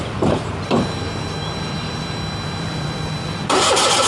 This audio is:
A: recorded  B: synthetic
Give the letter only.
B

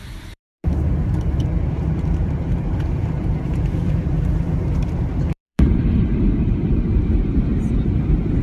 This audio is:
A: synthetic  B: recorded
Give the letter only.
A